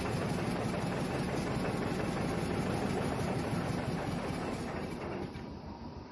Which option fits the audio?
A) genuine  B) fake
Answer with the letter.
A